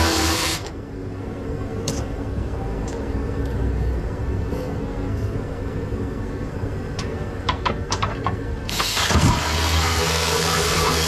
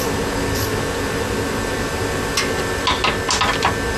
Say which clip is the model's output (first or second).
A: first